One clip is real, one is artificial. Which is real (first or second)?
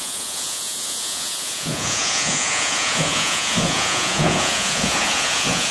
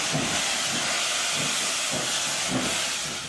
second